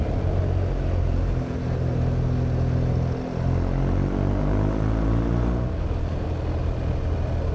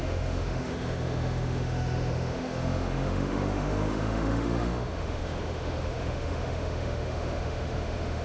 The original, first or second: first